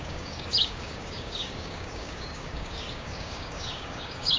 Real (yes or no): no